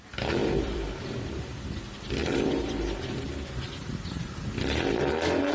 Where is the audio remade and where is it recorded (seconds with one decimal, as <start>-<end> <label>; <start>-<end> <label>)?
0.0-0.4 recorded; 0.4-1.8 remade; 1.8-2.2 recorded; 2.2-5.1 remade; 5.1-5.5 recorded